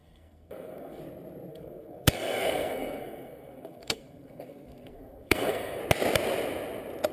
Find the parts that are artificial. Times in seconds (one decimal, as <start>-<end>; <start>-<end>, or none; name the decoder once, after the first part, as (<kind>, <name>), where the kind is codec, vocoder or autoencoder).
0.0-1.0 (codec, SNAC); 1.5-5.8